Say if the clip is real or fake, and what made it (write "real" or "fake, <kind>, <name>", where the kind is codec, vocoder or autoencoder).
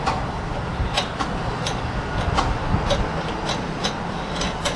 real